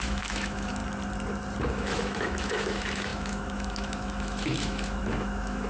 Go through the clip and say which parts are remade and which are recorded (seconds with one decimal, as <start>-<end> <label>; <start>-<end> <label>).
0.0-0.8 remade; 0.8-1.7 recorded; 1.7-5.7 remade